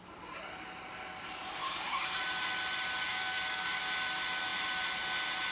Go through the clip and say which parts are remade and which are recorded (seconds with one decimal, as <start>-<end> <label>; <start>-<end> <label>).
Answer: 0.0-1.6 recorded; 1.6-2.2 remade; 2.2-3.1 recorded; 3.1-3.8 remade; 3.8-5.5 recorded